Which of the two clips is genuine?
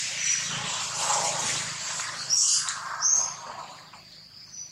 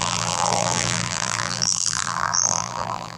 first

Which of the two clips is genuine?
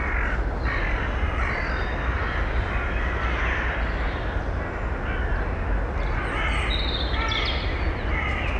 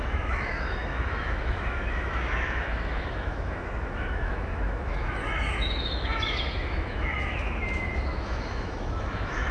first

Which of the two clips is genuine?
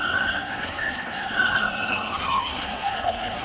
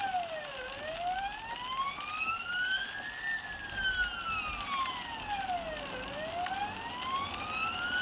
second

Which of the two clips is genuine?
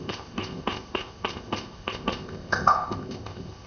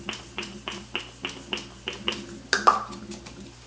second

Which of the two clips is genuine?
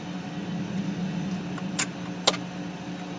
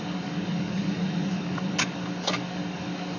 first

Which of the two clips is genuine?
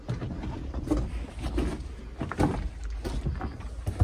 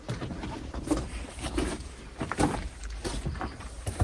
first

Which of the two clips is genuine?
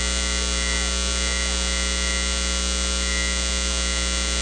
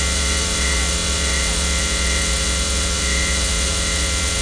first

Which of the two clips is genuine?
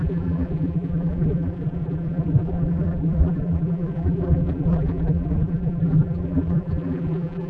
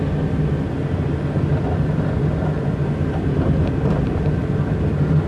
second